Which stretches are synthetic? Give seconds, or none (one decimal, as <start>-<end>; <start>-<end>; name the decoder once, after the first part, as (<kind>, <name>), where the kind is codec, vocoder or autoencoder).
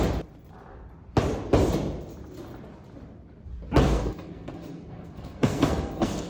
3.8-6.3 (codec, SNAC)